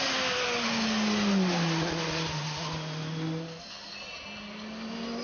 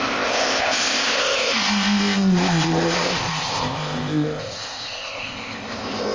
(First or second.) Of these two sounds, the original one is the first